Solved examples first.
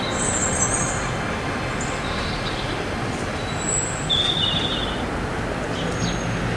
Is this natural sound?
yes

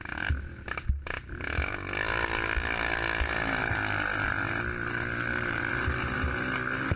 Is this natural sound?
yes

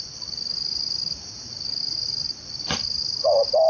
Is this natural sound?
yes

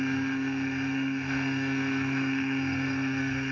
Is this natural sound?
no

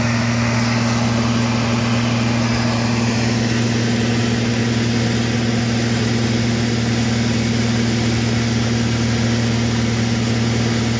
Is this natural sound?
yes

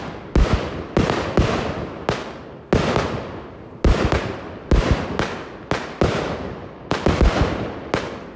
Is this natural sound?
yes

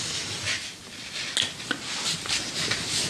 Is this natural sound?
yes